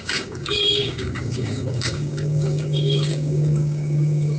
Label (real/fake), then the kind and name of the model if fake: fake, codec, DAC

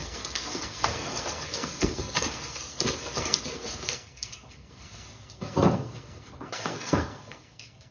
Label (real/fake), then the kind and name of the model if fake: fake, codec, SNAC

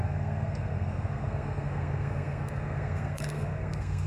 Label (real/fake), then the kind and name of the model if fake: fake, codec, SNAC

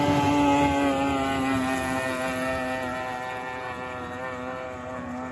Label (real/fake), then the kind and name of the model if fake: real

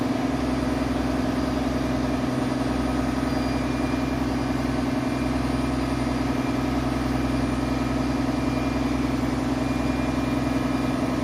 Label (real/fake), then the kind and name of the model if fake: real